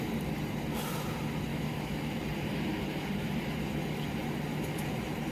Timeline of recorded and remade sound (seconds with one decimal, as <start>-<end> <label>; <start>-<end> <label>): 0.0-1.5 recorded; 1.5-2.2 remade; 2.2-5.3 recorded